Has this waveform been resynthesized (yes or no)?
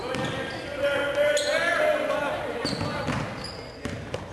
no